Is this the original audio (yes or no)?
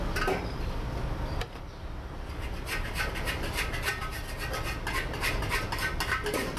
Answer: yes